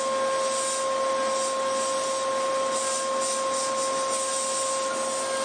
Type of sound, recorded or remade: recorded